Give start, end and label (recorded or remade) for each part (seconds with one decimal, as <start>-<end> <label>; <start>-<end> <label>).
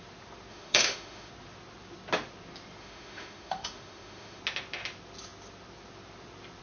0.0-0.5 recorded; 0.5-1.3 remade; 1.3-2.8 recorded; 2.8-4.4 remade; 4.4-6.6 recorded